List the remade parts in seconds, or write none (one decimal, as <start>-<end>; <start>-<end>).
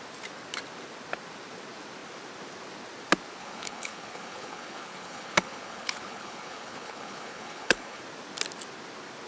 3.4-8.0